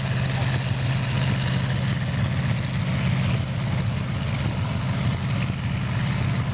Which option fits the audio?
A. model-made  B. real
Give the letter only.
B